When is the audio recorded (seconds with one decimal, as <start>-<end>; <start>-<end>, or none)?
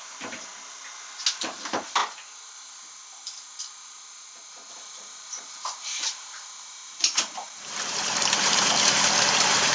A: 0.5-1.4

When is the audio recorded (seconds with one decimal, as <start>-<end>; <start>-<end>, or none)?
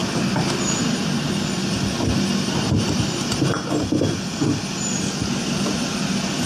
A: 0.0-6.5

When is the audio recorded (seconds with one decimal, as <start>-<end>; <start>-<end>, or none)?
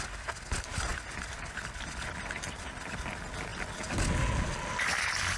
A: 0.0-5.4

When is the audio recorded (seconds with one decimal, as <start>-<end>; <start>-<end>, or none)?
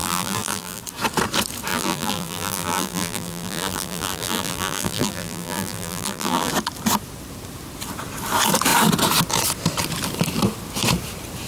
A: 0.8-1.7; 6.5-11.5